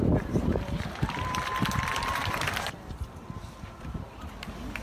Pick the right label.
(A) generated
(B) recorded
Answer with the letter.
A